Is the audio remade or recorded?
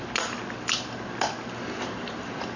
recorded